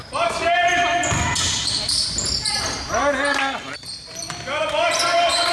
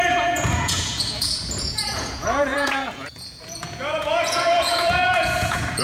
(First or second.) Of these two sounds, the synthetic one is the second